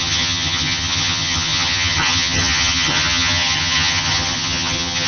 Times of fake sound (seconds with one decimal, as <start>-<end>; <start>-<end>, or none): 0.0-5.1